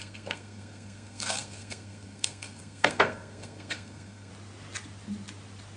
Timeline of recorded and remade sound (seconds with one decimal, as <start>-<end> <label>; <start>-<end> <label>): 0.0-4.3 remade; 4.3-5.8 recorded